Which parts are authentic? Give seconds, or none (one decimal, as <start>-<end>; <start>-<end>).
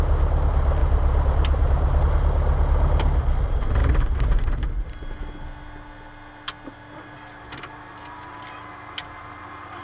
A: 0.0-0.8; 2.0-3.8; 4.9-9.8